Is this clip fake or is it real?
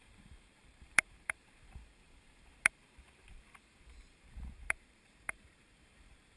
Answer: fake